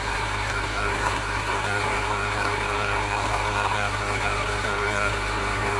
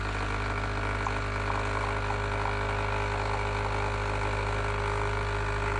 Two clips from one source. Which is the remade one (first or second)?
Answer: first